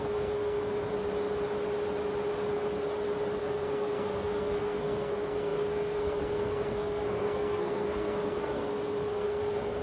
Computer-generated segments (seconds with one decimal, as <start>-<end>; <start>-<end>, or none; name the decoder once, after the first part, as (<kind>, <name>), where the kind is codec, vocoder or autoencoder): 0.0-0.9 (codec, SNAC); 3.4-9.8